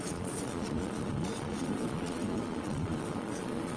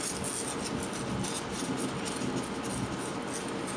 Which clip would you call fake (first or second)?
first